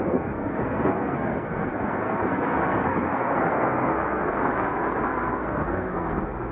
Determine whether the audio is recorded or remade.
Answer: remade